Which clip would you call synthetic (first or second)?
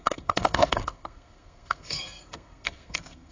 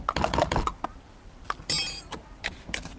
first